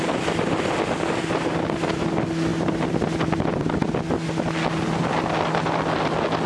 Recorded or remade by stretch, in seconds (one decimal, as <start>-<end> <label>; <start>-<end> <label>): 0.0-6.5 recorded